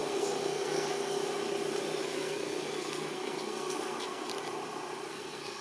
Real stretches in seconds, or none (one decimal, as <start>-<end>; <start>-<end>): 1.2-2.0; 4.3-5.1